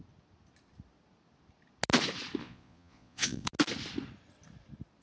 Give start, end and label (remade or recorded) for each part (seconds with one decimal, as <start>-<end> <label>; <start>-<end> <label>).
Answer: 0.0-2.4 recorded; 2.4-3.5 remade; 3.5-5.0 recorded